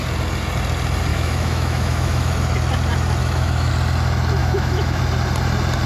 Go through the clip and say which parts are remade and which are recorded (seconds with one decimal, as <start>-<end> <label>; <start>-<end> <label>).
0.0-1.1 recorded; 1.1-2.3 remade; 2.3-3.2 recorded; 3.2-3.7 remade; 3.7-4.4 recorded; 4.4-5.0 remade; 5.0-5.9 recorded